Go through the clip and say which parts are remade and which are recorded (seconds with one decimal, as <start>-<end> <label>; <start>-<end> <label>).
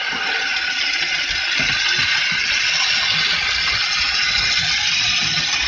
0.0-5.7 recorded